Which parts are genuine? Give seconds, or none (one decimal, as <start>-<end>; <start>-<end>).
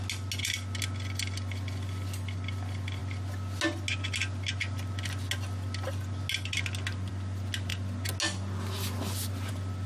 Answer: 0.0-9.9